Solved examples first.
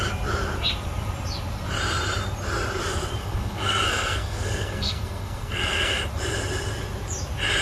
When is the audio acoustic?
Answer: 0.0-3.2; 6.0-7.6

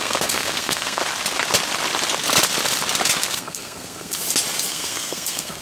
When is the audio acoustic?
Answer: 1.0-3.2; 4.2-4.7

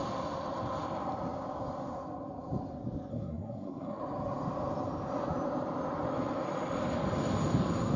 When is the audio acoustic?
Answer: 0.0-3.1; 4.0-8.0

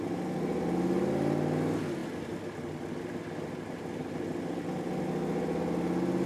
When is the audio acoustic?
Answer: 0.0-6.3